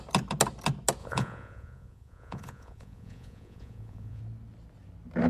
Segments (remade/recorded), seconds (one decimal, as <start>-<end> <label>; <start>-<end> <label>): 0.0-1.0 recorded; 1.0-4.2 remade; 4.2-5.3 recorded